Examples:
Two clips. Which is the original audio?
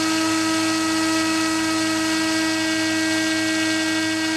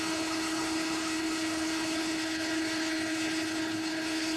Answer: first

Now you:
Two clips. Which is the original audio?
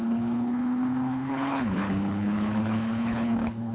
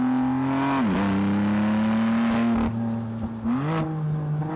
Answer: second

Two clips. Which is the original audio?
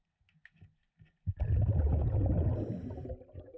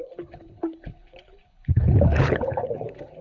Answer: first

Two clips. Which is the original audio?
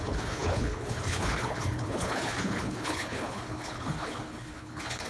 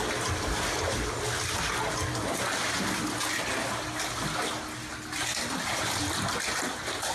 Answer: second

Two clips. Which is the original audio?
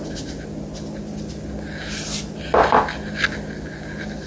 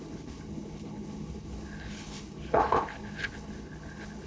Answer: first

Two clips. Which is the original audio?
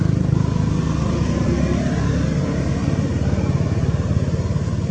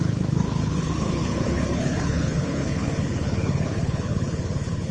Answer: first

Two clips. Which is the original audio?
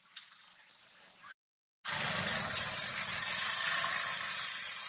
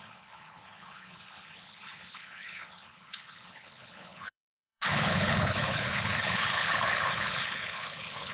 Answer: first